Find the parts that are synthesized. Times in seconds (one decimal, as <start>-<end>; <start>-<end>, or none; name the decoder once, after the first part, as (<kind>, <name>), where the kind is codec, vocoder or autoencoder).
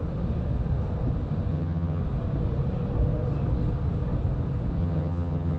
1.5-2.0 (vocoder, HiFi-GAN); 4.8-5.6